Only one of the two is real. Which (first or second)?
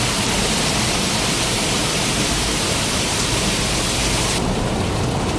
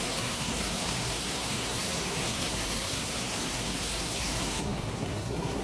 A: first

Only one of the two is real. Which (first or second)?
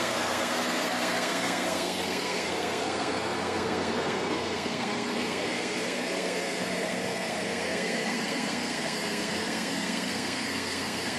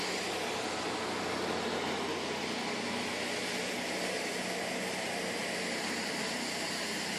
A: second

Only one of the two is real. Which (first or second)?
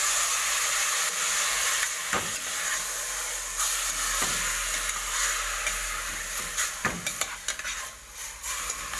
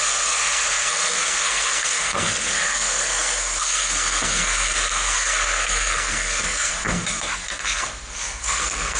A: first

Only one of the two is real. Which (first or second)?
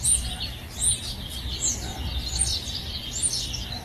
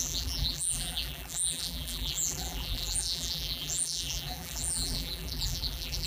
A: first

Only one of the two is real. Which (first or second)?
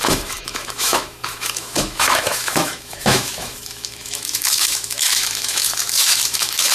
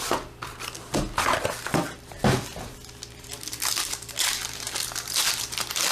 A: second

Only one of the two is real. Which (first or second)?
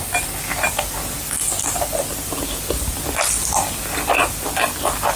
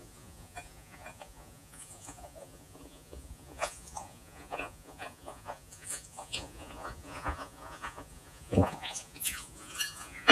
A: first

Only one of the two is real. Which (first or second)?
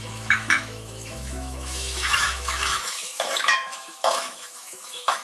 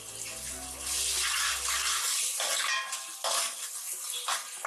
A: second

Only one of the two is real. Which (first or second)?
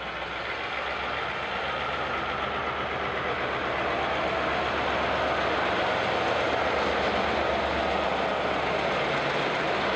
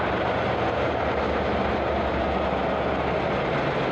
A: first